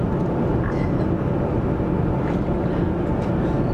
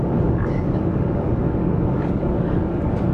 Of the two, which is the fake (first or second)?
second